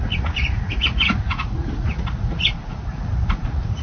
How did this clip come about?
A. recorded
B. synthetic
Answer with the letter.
B